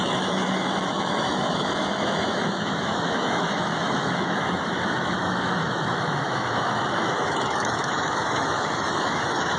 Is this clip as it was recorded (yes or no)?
no